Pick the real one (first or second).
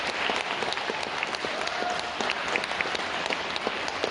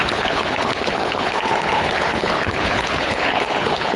first